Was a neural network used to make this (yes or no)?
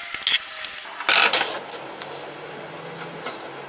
no